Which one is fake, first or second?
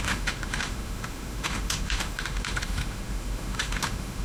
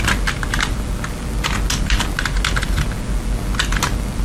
first